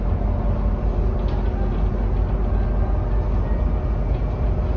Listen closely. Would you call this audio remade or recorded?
recorded